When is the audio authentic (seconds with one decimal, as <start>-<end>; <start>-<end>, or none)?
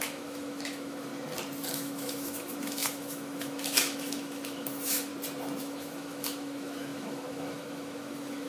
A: 1.1-1.7; 5.1-5.6